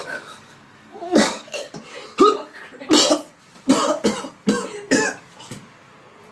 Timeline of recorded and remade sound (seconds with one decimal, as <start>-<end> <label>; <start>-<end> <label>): 0.0-1.7 remade; 1.7-6.3 recorded